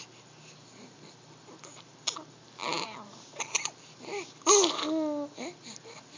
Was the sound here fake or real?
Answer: real